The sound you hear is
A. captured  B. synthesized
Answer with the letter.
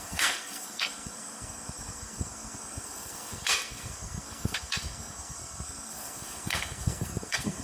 B